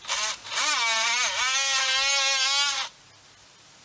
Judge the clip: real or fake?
real